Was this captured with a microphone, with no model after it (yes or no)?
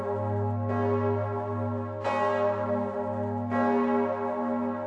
yes